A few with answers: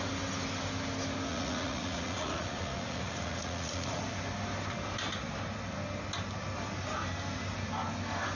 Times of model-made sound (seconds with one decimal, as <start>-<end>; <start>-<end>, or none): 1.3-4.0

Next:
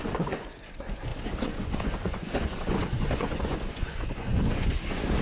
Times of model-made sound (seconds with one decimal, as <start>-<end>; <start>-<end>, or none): 0.0-5.2

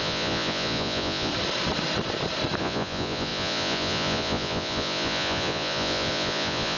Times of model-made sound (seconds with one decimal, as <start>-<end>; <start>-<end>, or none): 0.0-1.3; 2.6-6.8